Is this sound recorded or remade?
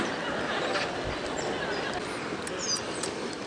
recorded